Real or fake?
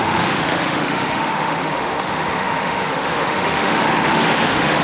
fake